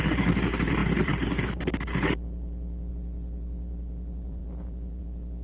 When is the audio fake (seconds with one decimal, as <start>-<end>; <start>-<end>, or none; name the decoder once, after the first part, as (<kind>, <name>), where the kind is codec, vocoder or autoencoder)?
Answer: 0.8-2.9 (vocoder, BigVGAN v2)